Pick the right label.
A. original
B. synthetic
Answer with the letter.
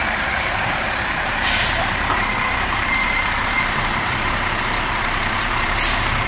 B